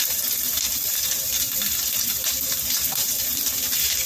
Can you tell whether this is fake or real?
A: fake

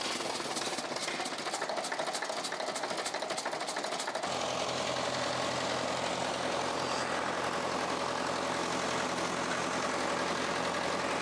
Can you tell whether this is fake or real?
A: real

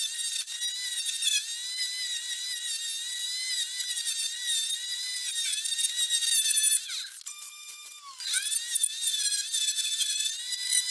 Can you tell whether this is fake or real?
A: real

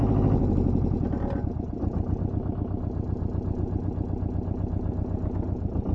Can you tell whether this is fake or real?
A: real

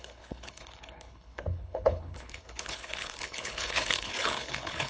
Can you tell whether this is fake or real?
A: fake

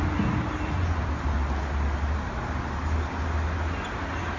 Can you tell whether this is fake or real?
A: real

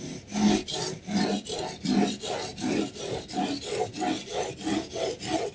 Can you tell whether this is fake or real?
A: real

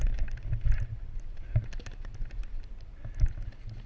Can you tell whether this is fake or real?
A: real